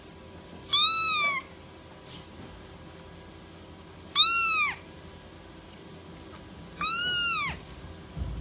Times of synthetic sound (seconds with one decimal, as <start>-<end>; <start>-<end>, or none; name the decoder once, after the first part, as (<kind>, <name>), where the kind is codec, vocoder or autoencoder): none